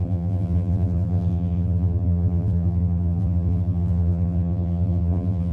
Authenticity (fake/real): fake